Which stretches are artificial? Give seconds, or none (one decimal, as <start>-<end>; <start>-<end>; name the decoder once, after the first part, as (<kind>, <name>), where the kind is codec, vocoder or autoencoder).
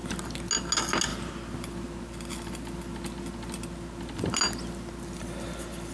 none